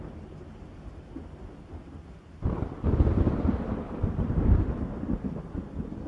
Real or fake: real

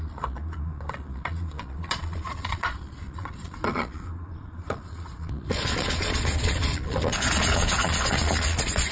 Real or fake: fake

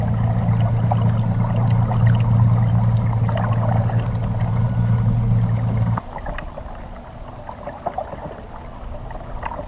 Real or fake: real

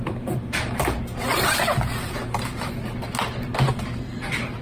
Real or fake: fake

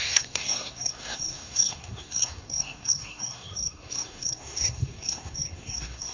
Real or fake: fake